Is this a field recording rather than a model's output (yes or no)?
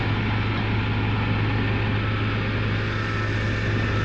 yes